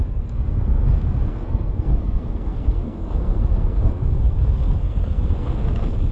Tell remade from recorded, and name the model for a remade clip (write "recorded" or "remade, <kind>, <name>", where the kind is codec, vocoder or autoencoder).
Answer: remade, codec, SNAC